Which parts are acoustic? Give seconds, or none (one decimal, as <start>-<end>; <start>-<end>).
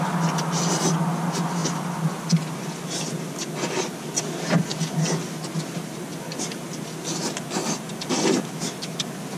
0.0-6.1; 6.7-9.4